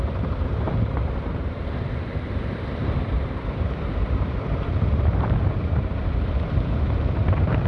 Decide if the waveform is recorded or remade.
remade